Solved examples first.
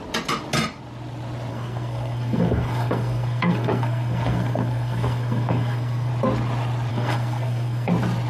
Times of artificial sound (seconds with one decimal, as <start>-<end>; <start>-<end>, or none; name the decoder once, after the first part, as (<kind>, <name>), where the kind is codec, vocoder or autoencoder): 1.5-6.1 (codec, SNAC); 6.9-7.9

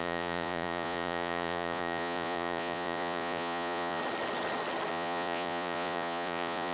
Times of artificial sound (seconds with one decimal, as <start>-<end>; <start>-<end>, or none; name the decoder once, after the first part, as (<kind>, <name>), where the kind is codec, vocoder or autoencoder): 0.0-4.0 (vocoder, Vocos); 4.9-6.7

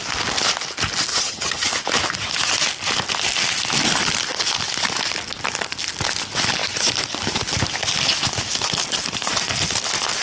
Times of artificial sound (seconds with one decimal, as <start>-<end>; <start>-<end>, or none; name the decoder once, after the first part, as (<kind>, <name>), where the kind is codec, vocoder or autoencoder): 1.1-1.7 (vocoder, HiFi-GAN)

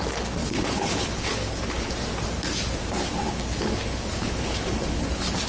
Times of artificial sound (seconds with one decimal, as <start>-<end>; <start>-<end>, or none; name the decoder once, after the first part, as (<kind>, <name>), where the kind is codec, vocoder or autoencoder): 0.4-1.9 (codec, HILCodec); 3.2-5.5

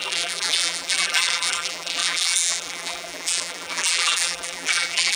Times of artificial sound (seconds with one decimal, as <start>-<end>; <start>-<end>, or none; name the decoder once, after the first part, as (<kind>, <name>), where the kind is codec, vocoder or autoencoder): 0.0-5.2 (vocoder, BigVGAN v2)

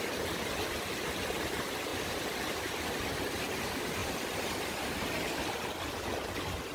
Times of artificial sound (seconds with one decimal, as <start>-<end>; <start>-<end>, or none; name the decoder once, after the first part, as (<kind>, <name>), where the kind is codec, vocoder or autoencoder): 1.9-2.7 (vocoder, BigVGAN v2); 4.0-4.7

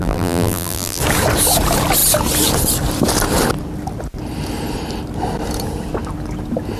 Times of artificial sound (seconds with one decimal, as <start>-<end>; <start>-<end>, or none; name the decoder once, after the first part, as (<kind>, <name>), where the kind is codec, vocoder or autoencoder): 0.0-1.0 (vocoder, BigVGAN v2)

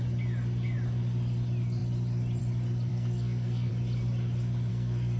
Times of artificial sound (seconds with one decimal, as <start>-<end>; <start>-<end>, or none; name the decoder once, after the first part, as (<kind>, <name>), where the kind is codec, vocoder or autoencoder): 2.9-3.7 (codec, SNAC); 4.7-5.2